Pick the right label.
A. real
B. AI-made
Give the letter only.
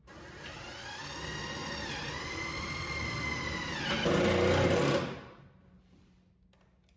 A